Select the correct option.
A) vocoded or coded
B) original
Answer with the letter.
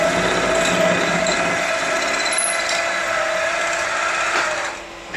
B